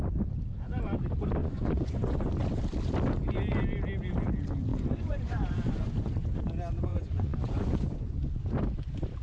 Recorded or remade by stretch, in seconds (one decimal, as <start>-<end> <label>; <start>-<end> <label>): 0.0-1.4 recorded; 1.4-2.3 remade; 2.3-4.7 recorded; 4.7-6.4 remade; 6.4-6.9 recorded; 6.9-8.4 remade; 8.4-9.2 recorded